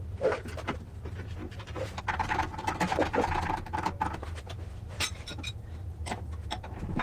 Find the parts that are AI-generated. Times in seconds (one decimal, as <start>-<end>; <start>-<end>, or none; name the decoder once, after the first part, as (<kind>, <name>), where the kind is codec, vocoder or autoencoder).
0.0-1.4 (vocoder, BigVGAN v2); 2.0-2.6; 4.4-7.0